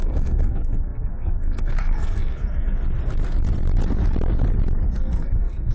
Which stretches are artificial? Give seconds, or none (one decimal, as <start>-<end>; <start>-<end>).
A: 0.0-2.8; 4.9-5.7